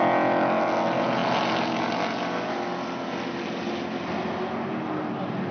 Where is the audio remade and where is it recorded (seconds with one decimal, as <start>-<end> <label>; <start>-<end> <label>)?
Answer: 0.0-5.5 recorded

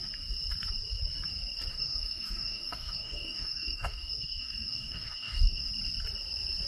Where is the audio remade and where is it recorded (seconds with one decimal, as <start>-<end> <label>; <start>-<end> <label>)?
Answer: 0.0-1.7 recorded; 1.7-5.7 remade; 5.7-6.7 recorded

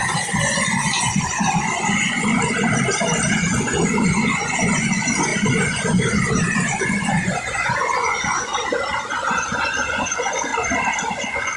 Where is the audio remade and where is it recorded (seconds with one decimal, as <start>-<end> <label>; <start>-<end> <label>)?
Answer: 0.0-2.3 remade; 2.3-3.3 recorded; 3.3-8.5 remade; 8.5-9.2 recorded; 9.2-10.5 remade; 10.5-11.2 recorded; 11.2-11.6 remade

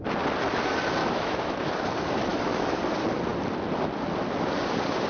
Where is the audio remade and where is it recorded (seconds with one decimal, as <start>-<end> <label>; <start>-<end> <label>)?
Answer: 0.0-1.0 recorded; 1.0-1.6 remade; 1.6-2.3 recorded; 2.3-2.8 remade; 2.8-5.1 recorded

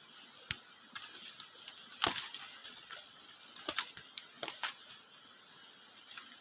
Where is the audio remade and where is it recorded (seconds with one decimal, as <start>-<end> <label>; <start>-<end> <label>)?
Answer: 0.0-2.6 recorded; 2.6-3.2 remade; 3.2-6.4 recorded

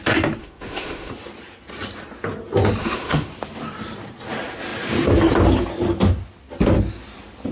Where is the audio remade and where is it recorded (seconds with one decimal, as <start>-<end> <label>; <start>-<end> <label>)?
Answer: 0.0-0.4 recorded; 0.4-1.1 remade; 1.1-2.8 recorded; 2.8-3.3 remade; 3.3-7.5 recorded

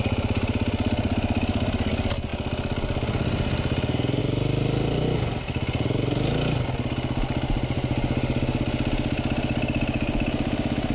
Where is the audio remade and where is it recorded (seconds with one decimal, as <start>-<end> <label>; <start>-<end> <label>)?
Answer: 0.0-10.9 recorded